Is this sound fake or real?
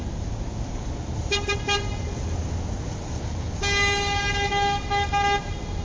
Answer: real